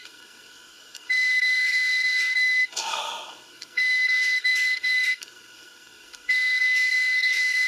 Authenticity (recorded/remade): remade